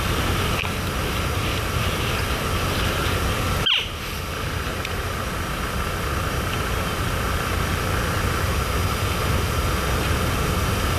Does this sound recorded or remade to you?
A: recorded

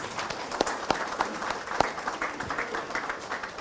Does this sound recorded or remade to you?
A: remade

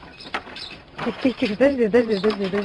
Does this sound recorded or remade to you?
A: remade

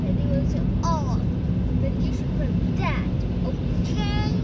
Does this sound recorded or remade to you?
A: recorded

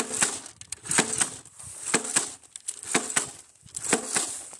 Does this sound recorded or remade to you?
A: recorded